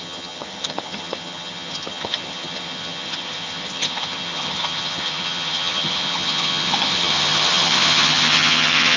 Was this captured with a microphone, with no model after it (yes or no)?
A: no